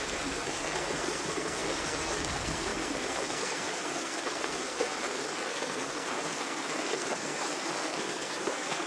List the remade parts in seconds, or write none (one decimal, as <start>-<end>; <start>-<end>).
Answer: 0.0-8.9